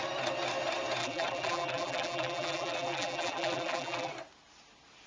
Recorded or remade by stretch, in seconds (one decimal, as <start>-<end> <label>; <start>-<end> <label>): 0.0-1.0 recorded; 1.0-4.1 remade; 4.1-5.1 recorded